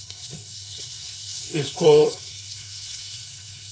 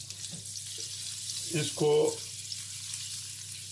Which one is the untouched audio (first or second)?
second